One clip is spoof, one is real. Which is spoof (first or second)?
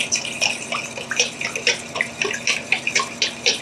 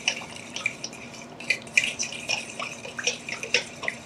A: second